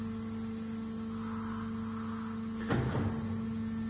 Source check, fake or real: real